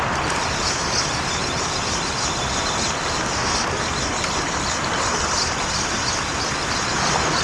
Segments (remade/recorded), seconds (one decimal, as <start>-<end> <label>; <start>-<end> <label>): 0.0-7.4 recorded